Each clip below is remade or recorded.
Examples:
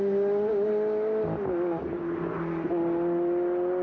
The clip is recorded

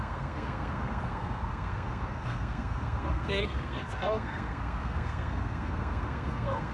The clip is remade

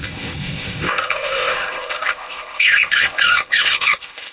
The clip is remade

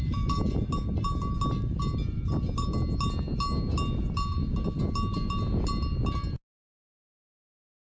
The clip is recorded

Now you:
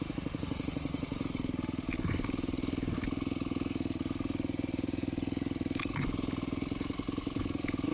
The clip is recorded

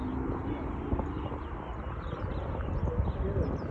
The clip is recorded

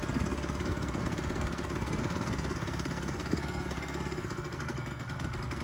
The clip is remade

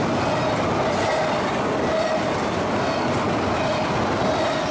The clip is recorded